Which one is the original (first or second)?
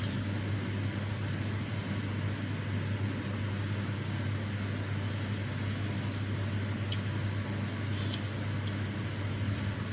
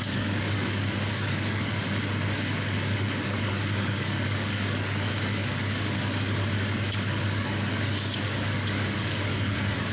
first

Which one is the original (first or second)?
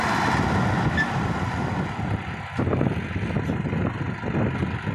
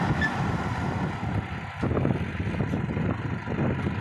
first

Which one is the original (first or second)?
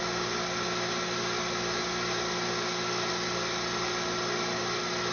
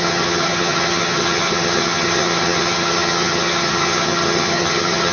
first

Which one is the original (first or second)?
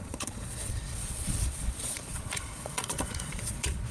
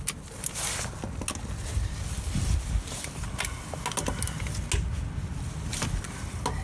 second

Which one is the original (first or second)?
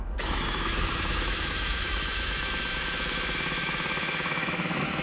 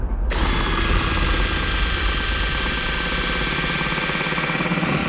second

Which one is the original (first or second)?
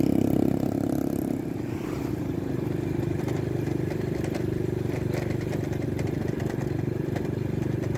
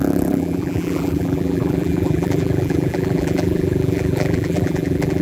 first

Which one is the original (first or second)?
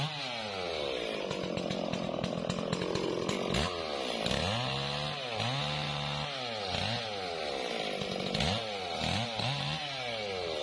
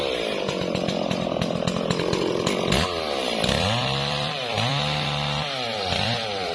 first